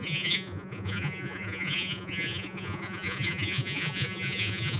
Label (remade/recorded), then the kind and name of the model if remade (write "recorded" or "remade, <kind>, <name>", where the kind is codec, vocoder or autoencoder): remade, vocoder, Vocos